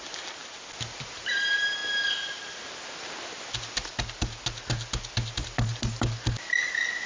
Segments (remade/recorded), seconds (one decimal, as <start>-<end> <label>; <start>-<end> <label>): 0.0-7.1 recorded